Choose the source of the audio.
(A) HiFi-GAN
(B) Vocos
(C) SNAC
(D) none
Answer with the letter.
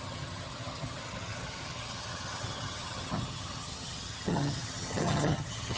A